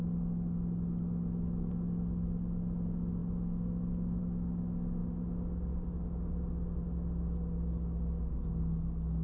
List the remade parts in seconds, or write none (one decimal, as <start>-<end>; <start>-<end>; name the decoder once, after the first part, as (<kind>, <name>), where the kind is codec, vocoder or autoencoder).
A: none